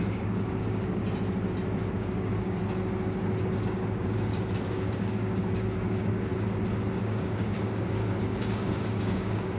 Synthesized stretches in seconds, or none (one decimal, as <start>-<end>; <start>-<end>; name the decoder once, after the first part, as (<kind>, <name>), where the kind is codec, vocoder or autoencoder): 0.0-1.0 (codec, DAC); 1.9-2.6; 3.4-6.3; 7.0-9.6